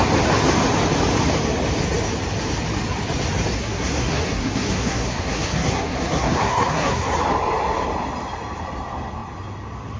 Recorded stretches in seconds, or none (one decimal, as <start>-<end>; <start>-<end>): 0.0-3.6; 7.2-10.0